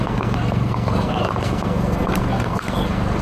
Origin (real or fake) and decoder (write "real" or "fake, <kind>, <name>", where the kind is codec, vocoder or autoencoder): fake, codec, SNAC